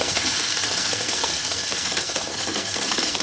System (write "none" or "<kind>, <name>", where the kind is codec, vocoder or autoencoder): codec, SNAC